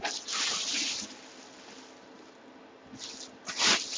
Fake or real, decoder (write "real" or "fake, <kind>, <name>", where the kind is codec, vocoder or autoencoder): real